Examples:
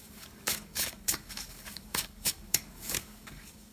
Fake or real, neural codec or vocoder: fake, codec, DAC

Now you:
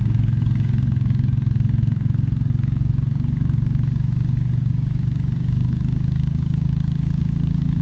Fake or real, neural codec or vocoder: fake, codec, DAC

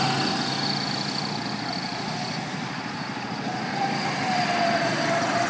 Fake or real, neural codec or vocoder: real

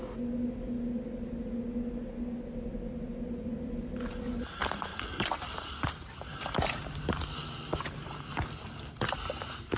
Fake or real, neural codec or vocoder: real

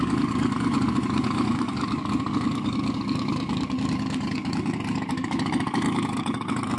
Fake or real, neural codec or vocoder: fake, codec, DAC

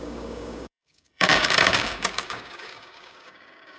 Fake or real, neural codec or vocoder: fake, codec, DAC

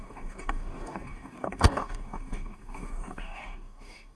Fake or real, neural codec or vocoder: fake, codec, DAC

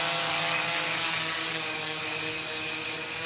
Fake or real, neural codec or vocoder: fake, codec, DAC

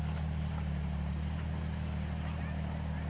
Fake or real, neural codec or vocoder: real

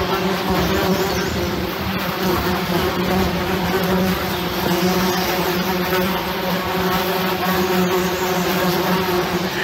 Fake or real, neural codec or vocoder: real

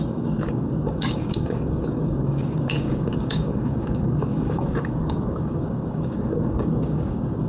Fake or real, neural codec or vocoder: fake, codec, DAC